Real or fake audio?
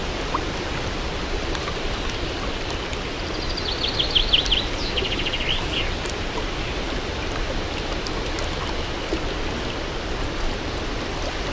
real